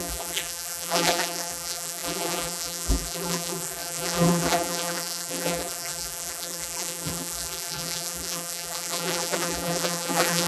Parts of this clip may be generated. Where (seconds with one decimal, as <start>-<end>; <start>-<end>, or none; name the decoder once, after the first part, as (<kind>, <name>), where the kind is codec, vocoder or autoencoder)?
0.0-10.5 (vocoder, BigVGAN v2)